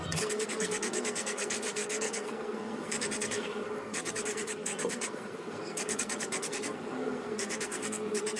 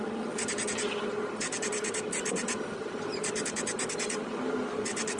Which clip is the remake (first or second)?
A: first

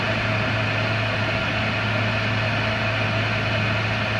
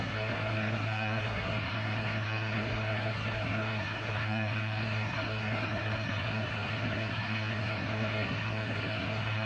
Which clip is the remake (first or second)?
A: second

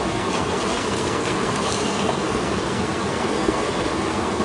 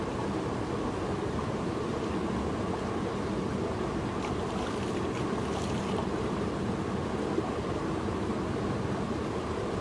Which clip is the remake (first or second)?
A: first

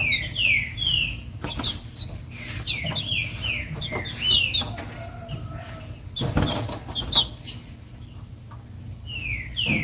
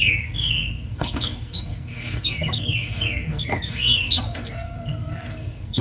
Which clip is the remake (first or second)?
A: second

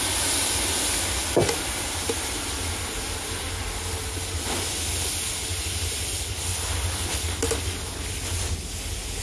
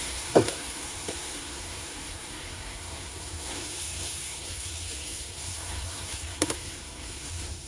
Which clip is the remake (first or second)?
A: second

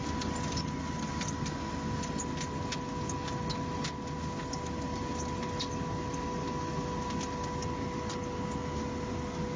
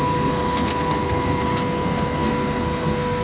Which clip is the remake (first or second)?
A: second